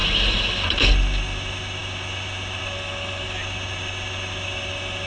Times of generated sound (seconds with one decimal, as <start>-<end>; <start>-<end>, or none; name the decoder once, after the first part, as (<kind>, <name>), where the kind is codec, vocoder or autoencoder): none